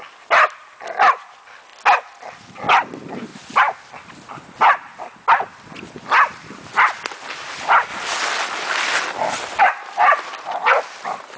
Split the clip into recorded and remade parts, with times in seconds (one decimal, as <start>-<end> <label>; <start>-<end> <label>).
0.0-1.7 remade; 1.7-2.4 recorded; 2.4-7.9 remade; 7.9-9.6 recorded; 9.6-11.4 remade